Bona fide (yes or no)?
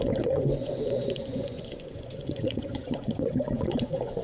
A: no